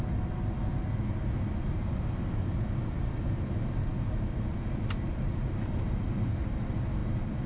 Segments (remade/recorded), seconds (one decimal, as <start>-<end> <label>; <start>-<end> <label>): 0.0-7.5 recorded